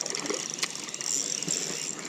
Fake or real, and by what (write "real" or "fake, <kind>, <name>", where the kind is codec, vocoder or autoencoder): real